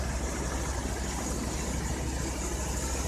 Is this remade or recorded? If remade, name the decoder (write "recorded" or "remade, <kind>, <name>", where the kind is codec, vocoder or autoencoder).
recorded